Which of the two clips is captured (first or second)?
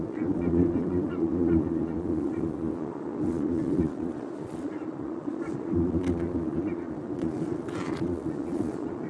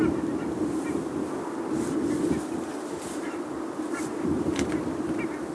second